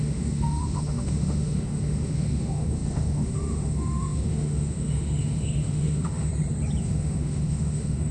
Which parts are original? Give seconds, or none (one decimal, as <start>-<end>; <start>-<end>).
6.3-6.8